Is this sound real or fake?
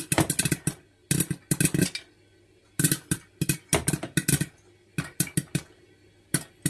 real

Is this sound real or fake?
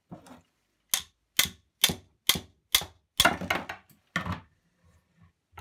real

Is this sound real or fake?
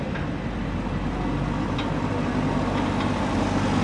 real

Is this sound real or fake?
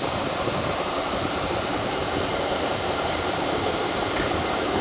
fake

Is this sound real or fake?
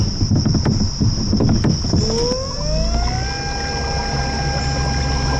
real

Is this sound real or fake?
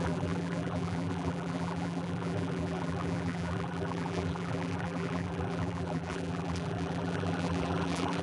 fake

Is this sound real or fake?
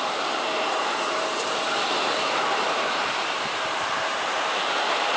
fake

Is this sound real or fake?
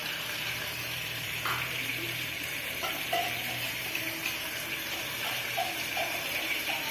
fake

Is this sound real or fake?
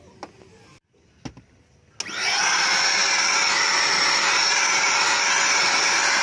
real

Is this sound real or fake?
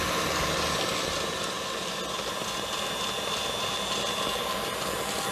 real